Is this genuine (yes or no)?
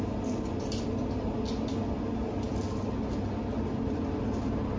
yes